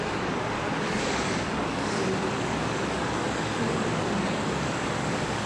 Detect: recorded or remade remade